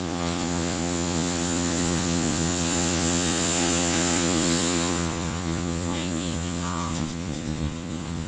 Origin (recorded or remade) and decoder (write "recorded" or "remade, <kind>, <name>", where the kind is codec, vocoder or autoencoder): remade, vocoder, Vocos